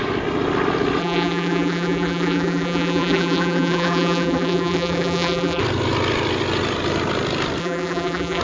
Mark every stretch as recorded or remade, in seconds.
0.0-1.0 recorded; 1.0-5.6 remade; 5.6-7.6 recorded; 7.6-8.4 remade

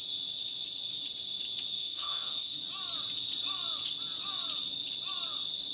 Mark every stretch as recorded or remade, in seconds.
0.0-1.7 recorded; 1.7-2.6 remade; 2.6-5.7 recorded

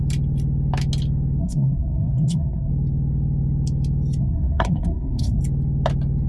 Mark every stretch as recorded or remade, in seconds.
0.0-1.4 recorded; 1.4-2.7 remade; 2.7-4.2 recorded; 4.2-5.4 remade; 5.4-6.3 recorded

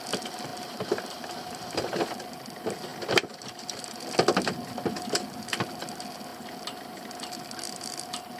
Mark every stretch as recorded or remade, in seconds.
0.0-0.5 recorded; 0.5-1.0 remade; 1.0-2.9 recorded; 2.9-3.8 remade; 3.8-6.3 recorded; 6.3-8.0 remade; 8.0-8.4 recorded

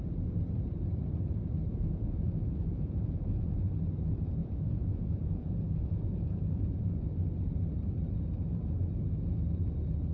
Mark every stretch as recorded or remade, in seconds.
0.0-1.7 recorded; 1.7-3.7 remade; 3.7-4.4 recorded; 4.4-7.2 remade; 7.2-10.1 recorded

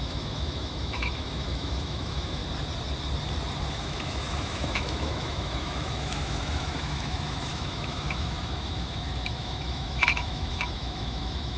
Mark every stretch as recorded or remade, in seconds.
0.0-2.4 remade; 2.4-3.7 recorded; 3.7-11.6 remade

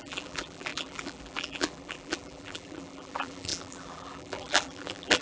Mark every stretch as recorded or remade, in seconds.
0.0-5.2 remade